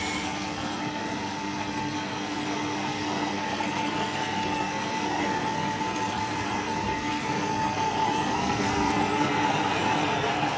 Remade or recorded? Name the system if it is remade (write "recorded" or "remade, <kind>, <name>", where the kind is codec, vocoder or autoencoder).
remade, codec, SNAC